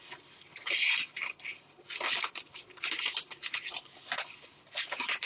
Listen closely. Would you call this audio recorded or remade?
recorded